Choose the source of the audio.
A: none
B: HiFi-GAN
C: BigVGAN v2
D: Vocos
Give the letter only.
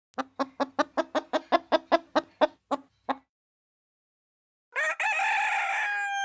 A